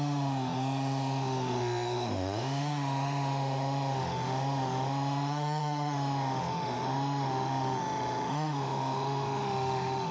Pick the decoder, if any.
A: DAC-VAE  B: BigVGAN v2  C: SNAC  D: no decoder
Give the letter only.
A